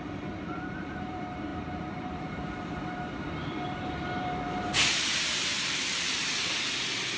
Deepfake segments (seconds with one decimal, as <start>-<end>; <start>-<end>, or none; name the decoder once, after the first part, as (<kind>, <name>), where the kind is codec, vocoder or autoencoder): 0.0-7.2 (vocoder, BigVGAN v2)